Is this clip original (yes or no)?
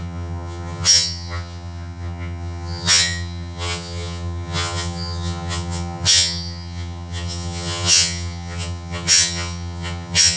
no